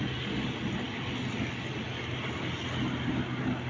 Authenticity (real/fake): real